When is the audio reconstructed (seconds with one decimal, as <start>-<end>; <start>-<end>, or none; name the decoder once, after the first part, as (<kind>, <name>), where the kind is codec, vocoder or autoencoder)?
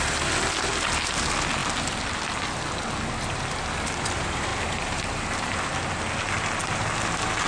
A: none